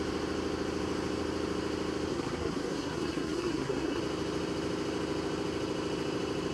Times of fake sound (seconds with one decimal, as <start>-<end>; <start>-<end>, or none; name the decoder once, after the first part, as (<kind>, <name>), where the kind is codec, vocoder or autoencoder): 2.1-4.0 (codec, SNAC)